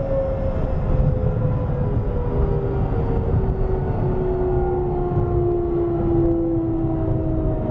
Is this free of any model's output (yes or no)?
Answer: yes